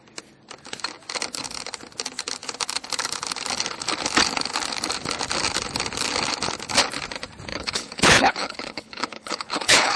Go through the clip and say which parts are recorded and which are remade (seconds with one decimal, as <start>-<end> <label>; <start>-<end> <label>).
0.0-7.5 recorded; 7.5-10.0 remade